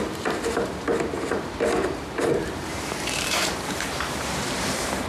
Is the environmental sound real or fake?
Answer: fake